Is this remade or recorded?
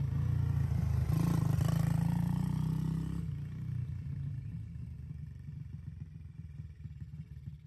recorded